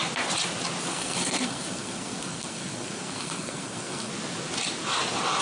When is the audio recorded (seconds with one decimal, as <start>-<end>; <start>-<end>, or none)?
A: 0.0-0.9; 4.1-5.4